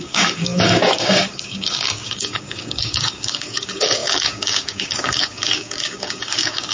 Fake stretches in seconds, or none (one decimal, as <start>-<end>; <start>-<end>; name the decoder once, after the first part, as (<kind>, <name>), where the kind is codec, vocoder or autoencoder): 0.0-6.7 (codec, DAC)